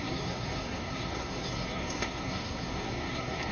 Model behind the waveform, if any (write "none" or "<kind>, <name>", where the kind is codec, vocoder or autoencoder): codec, SNAC